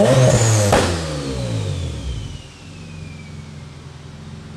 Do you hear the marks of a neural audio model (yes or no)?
no